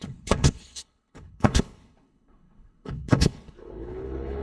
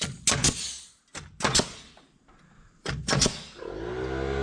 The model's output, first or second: first